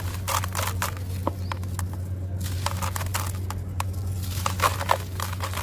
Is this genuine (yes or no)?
yes